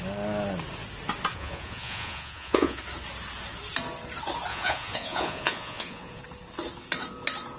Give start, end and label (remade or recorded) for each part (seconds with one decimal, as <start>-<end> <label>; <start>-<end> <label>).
0.0-1.3 recorded; 1.3-2.8 remade; 2.8-4.5 recorded; 4.5-6.2 remade; 6.2-7.6 recorded